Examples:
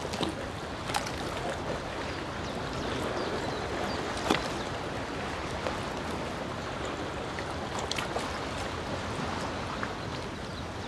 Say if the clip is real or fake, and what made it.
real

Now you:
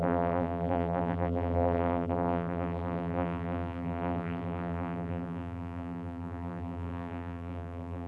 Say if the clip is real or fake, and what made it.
fake, vocoder, BigVGAN v2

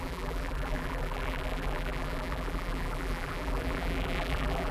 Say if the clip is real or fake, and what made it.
fake, vocoder, BigVGAN v2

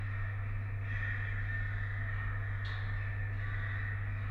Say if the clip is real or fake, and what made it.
real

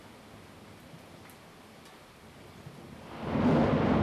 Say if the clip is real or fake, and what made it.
real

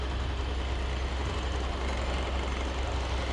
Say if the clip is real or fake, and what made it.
real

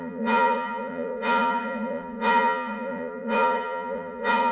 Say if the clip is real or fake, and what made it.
fake, vocoder, Vocos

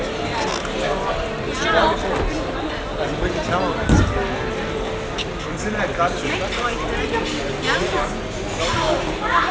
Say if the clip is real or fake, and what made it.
real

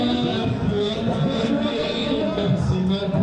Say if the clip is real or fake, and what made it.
fake, codec, SNAC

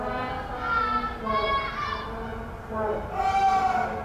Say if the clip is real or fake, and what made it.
real